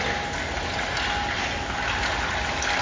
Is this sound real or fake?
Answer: real